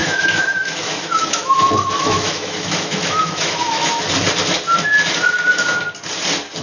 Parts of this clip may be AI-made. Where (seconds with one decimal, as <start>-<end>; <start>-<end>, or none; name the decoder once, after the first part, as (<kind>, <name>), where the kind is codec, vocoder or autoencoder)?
0.0-4.0 (autoencoder, DAC-VAE)

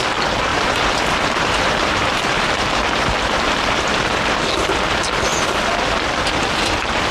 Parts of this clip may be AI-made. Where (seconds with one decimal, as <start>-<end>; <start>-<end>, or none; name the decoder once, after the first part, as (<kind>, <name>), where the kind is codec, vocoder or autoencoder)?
0.5-4.4 (vocoder, BigVGAN v2)

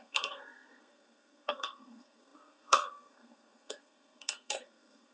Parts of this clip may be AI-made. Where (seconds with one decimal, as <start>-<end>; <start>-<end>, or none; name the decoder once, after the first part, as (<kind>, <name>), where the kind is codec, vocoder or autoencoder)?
0.0-5.1 (codec, SNAC)